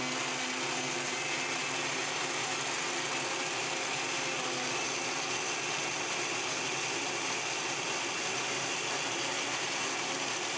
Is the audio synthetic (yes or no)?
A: no